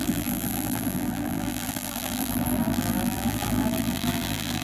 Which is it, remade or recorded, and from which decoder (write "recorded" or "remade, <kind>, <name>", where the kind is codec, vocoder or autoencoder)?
remade, vocoder, BigVGAN v2